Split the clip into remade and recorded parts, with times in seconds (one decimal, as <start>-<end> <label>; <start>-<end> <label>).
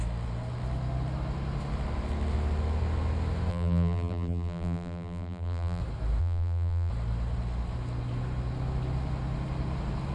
0.0-3.5 recorded; 3.5-5.8 remade; 5.8-6.2 recorded; 6.2-6.9 remade; 6.9-10.1 recorded